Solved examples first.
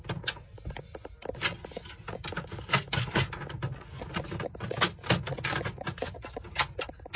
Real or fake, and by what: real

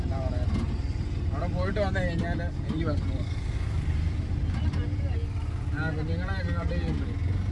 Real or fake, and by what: real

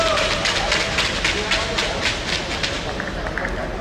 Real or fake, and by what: real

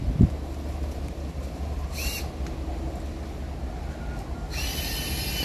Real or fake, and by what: real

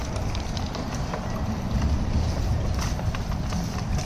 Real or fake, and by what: fake, vocoder, BigVGAN v2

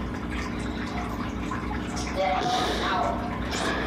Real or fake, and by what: fake, vocoder, BigVGAN v2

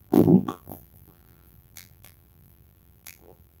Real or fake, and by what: fake, vocoder, BigVGAN v2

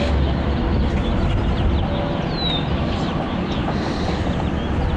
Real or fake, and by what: real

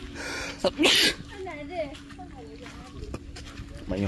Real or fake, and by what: real